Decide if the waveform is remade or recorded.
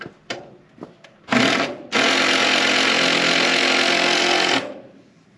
recorded